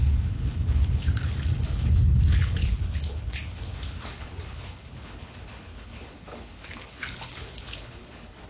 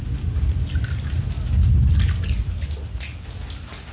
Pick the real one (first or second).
second